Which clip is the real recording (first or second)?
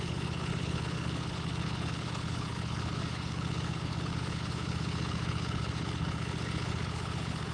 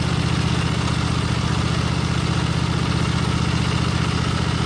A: second